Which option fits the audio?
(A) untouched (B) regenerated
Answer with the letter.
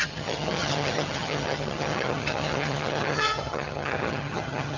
B